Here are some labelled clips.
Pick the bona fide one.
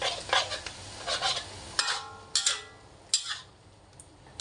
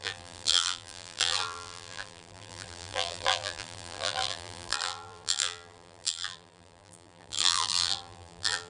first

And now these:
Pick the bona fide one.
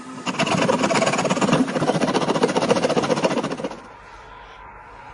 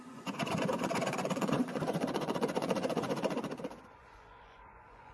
first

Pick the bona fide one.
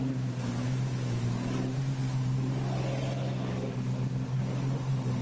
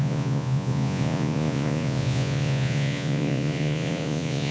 first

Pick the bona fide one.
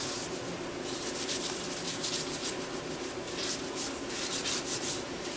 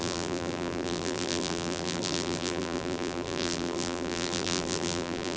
first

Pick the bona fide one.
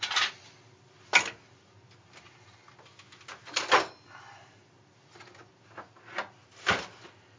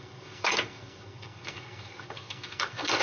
first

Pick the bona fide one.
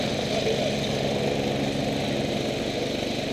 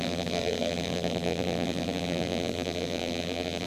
first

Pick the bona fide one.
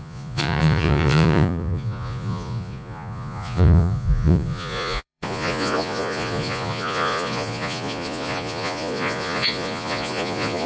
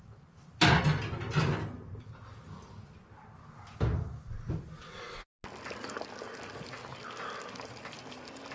second